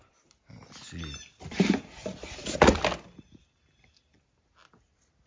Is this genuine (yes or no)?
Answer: yes